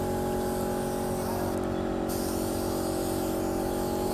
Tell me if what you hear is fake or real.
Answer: real